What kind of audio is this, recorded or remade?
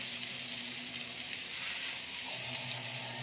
recorded